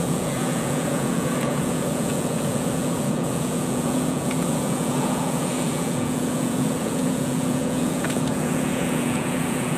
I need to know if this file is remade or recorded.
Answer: remade